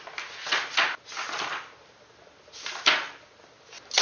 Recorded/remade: recorded